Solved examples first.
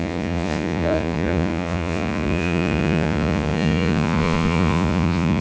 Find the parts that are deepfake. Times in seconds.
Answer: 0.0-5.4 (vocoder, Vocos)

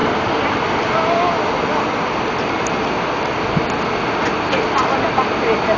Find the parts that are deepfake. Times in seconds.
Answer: none

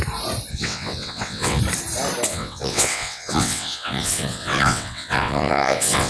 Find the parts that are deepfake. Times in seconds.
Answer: 0.5-1.6 (vocoder, WaveNeXt); 2.3-6.1

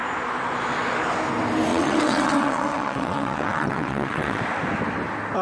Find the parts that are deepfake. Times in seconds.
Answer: 1.7-4.4 (vocoder, WaveNeXt)